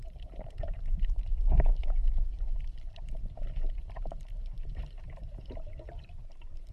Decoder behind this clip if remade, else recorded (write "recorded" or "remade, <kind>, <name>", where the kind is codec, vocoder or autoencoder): remade, vocoder, BigVGAN v2